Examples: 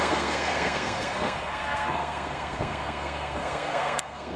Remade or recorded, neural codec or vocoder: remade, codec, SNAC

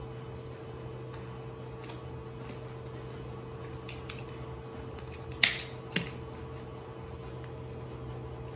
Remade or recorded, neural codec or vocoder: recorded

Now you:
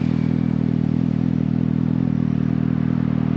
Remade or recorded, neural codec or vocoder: recorded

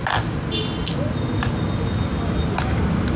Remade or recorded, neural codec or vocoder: recorded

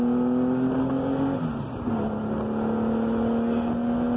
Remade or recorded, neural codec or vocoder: recorded